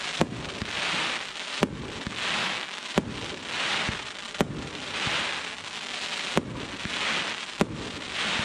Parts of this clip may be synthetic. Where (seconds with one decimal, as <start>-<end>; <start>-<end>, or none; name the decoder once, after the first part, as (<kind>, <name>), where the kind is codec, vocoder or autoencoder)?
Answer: 2.4-2.9 (autoencoder, DAC-VAE)